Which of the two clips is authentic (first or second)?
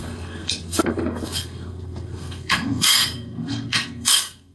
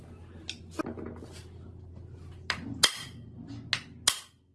second